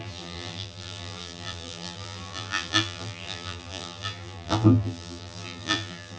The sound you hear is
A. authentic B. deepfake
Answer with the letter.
B